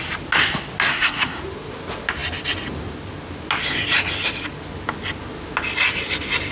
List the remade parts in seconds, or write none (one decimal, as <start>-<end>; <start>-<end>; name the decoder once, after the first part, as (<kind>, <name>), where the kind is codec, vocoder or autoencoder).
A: 0.9-1.4 (codec, SNAC)